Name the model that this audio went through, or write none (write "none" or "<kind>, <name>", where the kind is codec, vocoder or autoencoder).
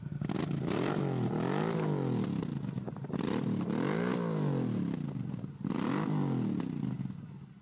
none